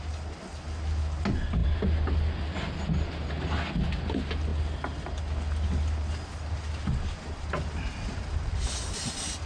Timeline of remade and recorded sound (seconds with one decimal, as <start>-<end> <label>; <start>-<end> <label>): 0.0-9.5 recorded